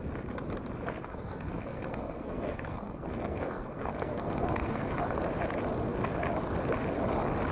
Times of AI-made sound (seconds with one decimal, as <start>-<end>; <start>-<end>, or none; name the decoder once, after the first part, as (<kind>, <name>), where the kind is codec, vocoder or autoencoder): 1.1-4.9 (codec, SNAC)